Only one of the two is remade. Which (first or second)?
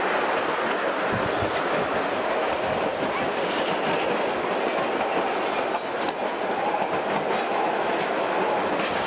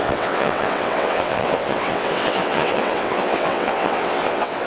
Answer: second